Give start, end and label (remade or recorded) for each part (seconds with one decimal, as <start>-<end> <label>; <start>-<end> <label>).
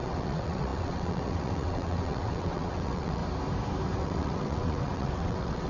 0.0-3.2 remade; 3.2-4.0 recorded; 4.0-5.7 remade